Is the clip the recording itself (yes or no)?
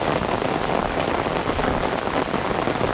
yes